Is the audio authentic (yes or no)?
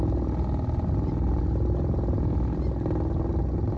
yes